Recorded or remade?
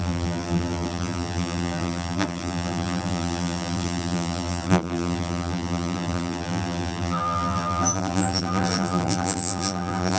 remade